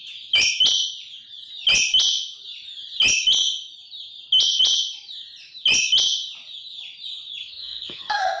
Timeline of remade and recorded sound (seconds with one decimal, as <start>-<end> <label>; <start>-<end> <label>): 0.0-7.4 recorded; 7.4-8.4 remade